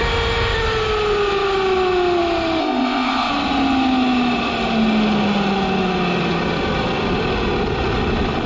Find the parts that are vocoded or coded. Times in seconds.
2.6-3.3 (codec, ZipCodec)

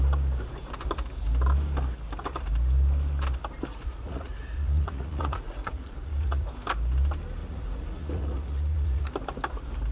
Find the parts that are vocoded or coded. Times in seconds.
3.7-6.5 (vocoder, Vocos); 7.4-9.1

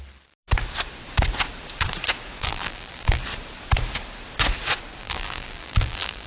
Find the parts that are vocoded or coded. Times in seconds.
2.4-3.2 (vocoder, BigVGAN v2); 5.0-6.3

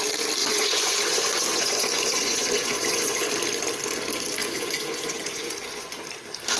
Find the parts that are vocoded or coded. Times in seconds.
0.4-3.3 (vocoder, Vocos); 4.4-6.0